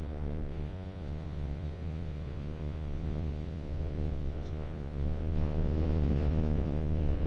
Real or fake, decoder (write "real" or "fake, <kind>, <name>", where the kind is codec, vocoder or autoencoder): fake, vocoder, Vocos